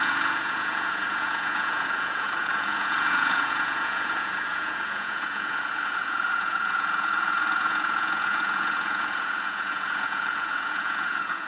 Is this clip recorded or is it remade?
remade